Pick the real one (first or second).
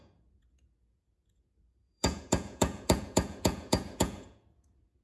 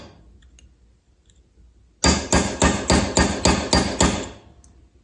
second